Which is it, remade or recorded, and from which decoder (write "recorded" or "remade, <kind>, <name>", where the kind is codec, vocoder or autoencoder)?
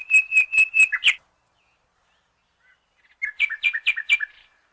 recorded